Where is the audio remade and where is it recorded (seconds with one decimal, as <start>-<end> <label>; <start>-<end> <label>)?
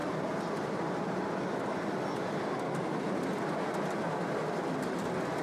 0.0-5.4 recorded